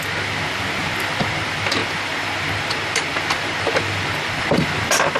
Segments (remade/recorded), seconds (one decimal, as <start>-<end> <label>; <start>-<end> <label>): 0.0-5.2 recorded